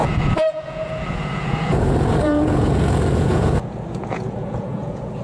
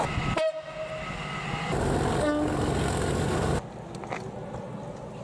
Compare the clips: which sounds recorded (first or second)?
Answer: second